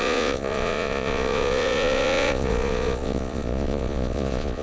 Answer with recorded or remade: remade